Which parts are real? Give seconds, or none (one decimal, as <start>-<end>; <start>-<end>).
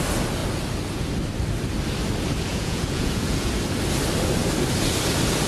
0.0-2.5; 3.5-5.5